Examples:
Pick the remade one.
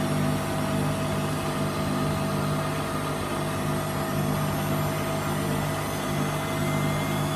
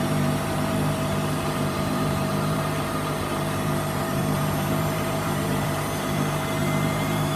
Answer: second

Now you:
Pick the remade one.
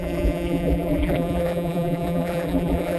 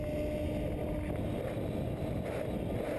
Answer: first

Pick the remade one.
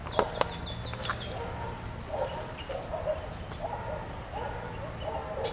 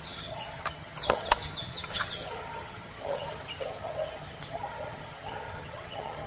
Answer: second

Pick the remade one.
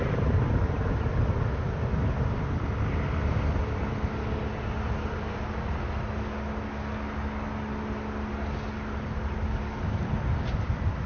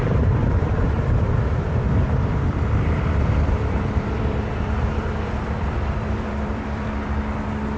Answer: second